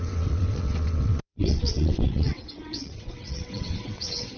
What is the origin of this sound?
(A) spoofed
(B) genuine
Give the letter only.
A